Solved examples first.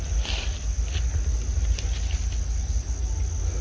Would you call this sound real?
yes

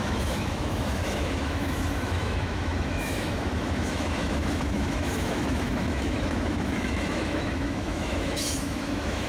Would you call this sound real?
no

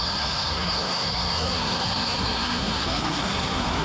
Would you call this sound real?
no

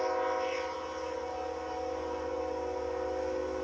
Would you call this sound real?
yes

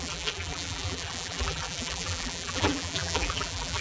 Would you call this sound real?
no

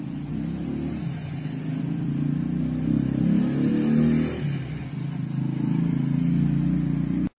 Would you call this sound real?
yes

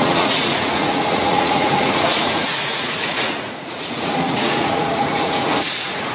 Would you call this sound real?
no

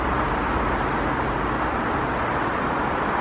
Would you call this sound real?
yes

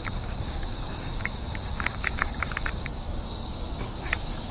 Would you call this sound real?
no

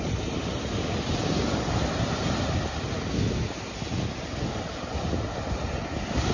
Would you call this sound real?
yes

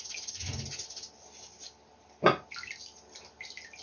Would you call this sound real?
yes